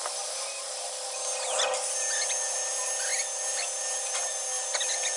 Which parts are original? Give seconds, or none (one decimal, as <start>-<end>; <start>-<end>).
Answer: 0.0-5.2

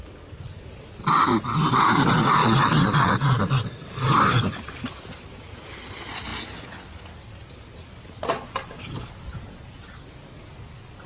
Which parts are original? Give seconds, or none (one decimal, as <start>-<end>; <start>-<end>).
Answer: 0.0-2.4; 3.4-11.1

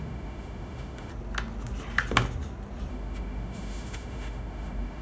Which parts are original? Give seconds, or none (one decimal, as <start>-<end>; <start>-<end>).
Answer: 1.1-2.9

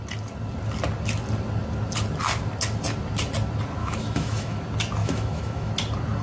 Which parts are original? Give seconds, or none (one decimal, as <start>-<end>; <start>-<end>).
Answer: 0.0-3.8; 4.6-5.0; 5.7-6.2

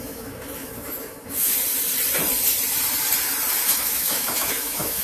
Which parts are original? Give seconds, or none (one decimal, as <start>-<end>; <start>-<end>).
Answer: 1.6-3.5

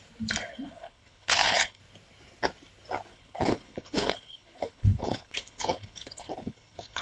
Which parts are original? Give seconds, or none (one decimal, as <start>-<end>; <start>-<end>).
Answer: 0.0-0.5; 1.8-3.1

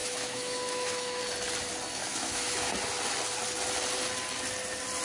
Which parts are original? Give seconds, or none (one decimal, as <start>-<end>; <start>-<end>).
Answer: 1.2-2.0; 2.7-5.0

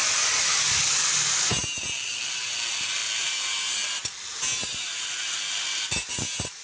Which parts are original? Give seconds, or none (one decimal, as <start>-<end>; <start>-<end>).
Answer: 0.0-6.6